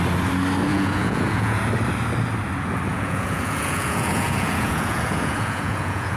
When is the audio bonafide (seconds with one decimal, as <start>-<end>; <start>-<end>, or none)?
0.0-0.7; 1.6-2.9